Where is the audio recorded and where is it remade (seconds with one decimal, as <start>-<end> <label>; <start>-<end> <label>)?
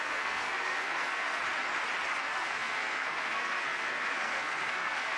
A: 0.0-1.4 remade; 1.4-2.2 recorded; 2.2-5.2 remade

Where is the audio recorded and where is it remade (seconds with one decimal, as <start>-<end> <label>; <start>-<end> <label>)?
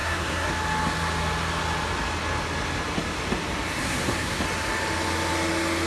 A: 0.0-0.5 remade; 0.5-3.8 recorded; 3.8-4.4 remade; 4.4-5.9 recorded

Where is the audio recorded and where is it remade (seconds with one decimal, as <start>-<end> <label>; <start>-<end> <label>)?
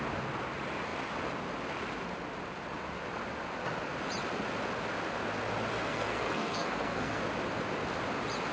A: 0.0-5.9 recorded; 5.9-7.2 remade; 7.2-8.5 recorded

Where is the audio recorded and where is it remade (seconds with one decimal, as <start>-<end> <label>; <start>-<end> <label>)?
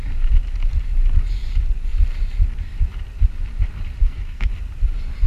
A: 0.0-4.0 recorded; 4.0-4.5 remade; 4.5-5.3 recorded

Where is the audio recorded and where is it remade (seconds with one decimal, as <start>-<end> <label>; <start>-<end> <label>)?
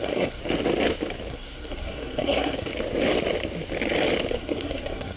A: 0.0-0.4 remade; 0.4-1.3 recorded; 1.3-2.7 remade; 2.7-4.3 recorded; 4.3-5.2 remade